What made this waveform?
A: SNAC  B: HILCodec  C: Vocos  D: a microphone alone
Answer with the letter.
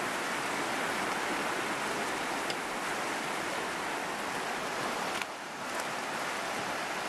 D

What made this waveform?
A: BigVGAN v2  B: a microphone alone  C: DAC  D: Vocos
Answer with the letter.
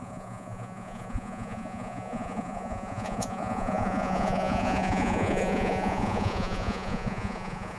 D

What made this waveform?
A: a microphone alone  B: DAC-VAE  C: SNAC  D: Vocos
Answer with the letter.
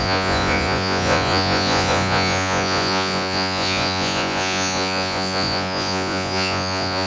D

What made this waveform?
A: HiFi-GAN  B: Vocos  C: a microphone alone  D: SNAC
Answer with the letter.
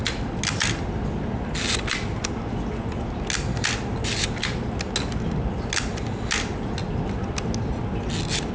C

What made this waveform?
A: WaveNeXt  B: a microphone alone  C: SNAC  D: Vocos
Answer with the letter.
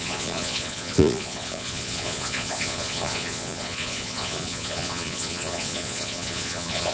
D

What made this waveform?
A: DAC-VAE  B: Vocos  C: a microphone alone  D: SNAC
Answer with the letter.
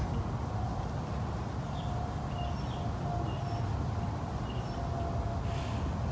C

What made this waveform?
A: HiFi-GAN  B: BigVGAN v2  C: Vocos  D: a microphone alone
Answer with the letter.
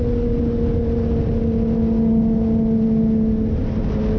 D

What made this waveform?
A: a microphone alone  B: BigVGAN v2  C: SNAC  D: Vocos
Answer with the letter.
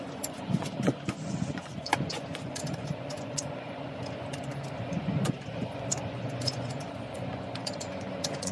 D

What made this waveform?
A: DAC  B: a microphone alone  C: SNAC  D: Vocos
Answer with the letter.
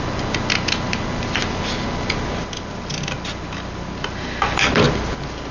B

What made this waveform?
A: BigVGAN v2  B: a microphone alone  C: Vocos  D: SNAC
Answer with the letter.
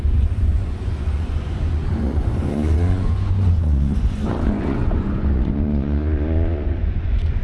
C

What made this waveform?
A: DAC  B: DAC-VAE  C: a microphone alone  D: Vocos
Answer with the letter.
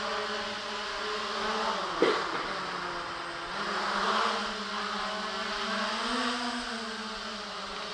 C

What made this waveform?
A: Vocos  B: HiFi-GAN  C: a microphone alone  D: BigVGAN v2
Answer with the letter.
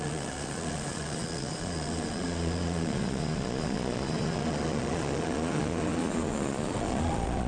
A